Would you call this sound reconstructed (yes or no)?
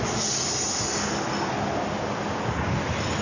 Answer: no